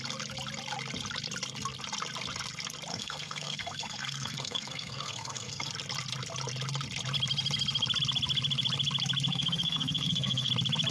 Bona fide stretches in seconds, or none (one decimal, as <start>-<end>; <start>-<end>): 0.0-2.9; 5.7-9.3; 10.5-10.9